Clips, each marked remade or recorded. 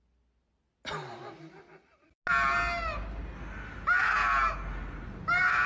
recorded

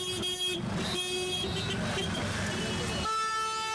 recorded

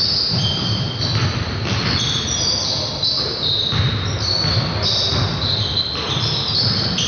recorded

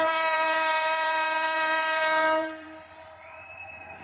remade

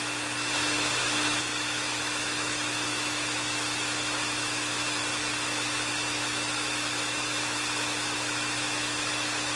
remade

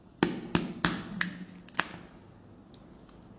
recorded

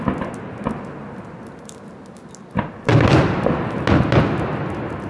recorded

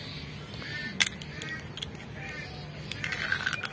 recorded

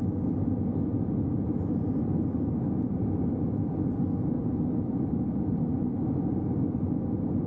recorded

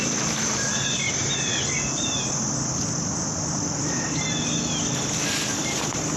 recorded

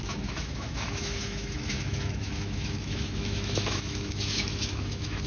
remade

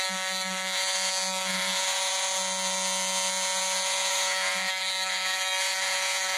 remade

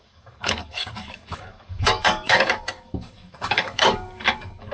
remade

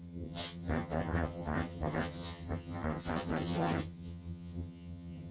remade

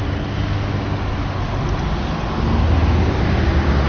recorded